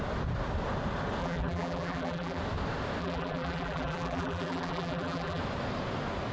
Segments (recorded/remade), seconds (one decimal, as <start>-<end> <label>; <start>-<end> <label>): 0.0-1.2 recorded; 1.2-2.4 remade; 2.4-3.0 recorded; 3.0-5.4 remade; 5.4-6.3 recorded